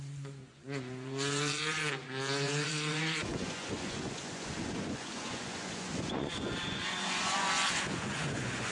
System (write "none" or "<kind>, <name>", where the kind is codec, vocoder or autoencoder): vocoder, Vocos